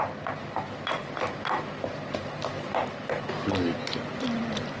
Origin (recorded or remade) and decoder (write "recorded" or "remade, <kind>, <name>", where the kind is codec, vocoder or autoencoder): recorded